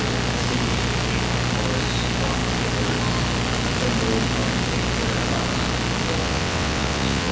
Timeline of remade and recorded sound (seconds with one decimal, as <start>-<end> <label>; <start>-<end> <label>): 0.0-6.2 recorded; 6.2-7.3 remade